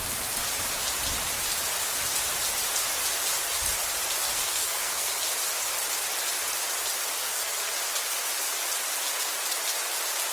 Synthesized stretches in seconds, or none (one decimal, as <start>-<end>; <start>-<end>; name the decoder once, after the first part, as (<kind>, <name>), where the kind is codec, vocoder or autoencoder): 4.2-5.2 (codec, SNAC); 7.2-7.7